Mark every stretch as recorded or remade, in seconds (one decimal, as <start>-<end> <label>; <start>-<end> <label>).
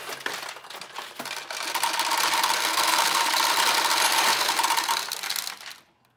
0.0-2.6 recorded; 2.6-3.3 remade; 3.3-6.2 recorded